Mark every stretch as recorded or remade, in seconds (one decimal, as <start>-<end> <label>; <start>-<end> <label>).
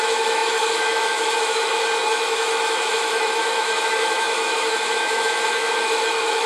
0.0-6.5 remade